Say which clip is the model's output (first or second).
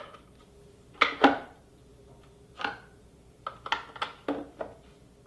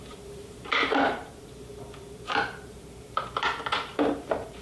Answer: second